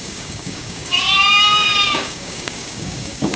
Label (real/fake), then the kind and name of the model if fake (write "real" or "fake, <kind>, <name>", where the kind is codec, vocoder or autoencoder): fake, codec, DAC